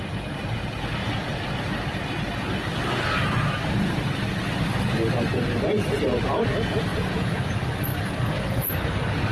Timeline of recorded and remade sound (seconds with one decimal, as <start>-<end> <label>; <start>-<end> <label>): 0.0-6.9 recorded; 6.9-7.5 remade; 7.5-9.3 recorded